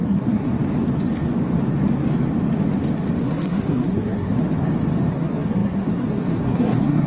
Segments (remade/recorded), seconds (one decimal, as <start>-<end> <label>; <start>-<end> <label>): 0.0-0.5 remade; 0.5-3.2 recorded; 3.2-4.4 remade; 4.4-5.1 recorded; 5.1-7.1 remade